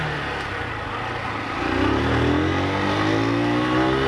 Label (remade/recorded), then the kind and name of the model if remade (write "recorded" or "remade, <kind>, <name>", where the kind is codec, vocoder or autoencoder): recorded